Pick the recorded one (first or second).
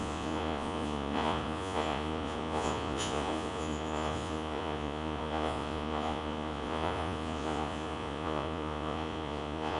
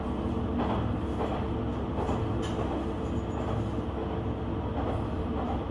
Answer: second